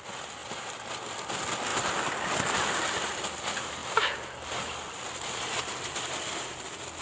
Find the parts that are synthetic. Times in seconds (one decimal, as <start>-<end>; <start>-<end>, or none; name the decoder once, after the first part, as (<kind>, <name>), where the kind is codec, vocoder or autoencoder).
0.4-0.9 (vocoder, BigVGAN v2)